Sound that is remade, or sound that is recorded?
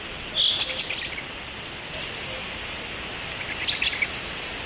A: recorded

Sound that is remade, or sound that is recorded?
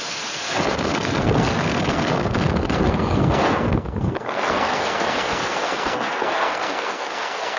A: remade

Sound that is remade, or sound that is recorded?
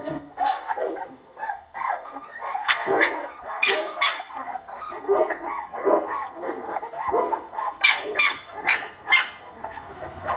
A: remade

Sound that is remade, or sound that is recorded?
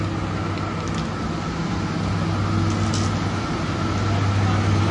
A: recorded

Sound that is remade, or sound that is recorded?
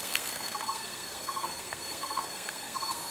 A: remade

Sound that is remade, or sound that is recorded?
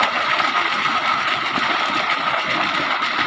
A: recorded